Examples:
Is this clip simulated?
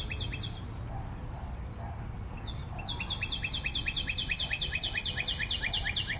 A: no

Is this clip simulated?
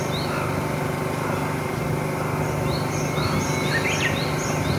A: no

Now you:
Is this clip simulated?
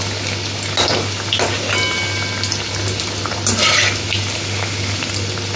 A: no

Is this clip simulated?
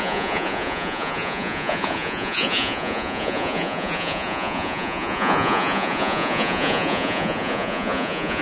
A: yes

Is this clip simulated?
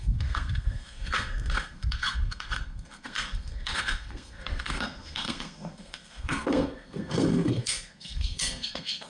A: yes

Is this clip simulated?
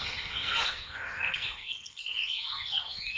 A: yes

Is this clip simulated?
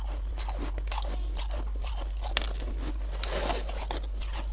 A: no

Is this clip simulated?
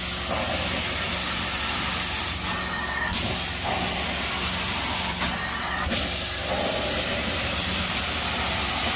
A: no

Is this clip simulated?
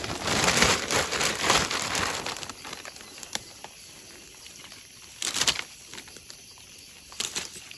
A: yes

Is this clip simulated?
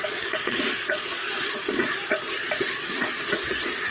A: yes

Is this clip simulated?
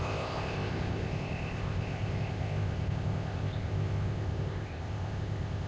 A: yes